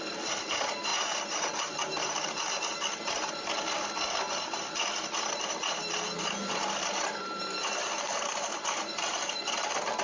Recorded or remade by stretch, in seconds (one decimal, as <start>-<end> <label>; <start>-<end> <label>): 0.0-0.9 recorded; 0.9-2.6 remade; 2.6-6.6 recorded; 6.6-9.4 remade; 9.4-10.0 recorded